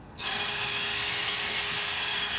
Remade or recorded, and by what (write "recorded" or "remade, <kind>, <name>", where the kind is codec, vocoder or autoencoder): remade, codec, SNAC